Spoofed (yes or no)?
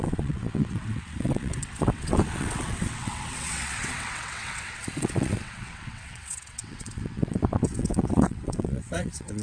yes